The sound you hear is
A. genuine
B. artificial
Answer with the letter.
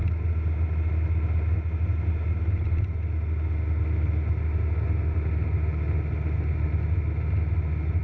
A